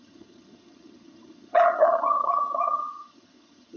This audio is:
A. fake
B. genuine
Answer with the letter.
A